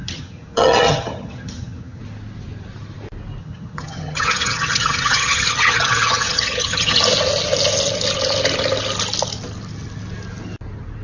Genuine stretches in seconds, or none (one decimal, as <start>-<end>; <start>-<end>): 2.0-3.4; 7.0-11.0